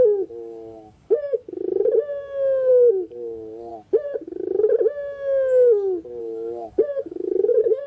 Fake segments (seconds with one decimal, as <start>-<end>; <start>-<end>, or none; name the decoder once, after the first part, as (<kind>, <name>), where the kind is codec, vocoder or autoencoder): 0.0-1.4 (codec, DAC); 2.7-3.7; 6.2-7.9